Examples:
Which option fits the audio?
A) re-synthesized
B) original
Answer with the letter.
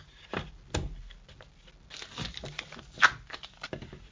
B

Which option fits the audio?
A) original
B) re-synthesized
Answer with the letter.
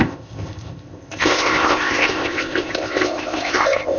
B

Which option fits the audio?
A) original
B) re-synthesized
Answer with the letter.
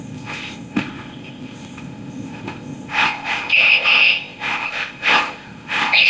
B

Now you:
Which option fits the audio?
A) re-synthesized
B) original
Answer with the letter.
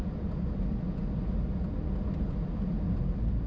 B